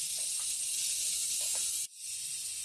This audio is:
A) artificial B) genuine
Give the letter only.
B